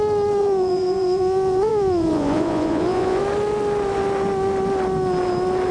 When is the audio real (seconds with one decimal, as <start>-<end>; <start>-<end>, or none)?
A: 0.0-0.4; 3.2-5.7